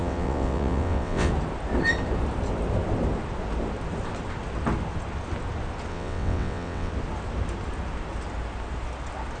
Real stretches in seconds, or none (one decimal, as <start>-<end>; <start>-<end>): 1.3-5.9; 6.9-9.4